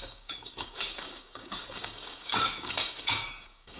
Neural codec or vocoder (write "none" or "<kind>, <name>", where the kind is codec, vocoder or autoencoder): codec, DAC